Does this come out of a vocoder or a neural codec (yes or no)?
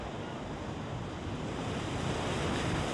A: no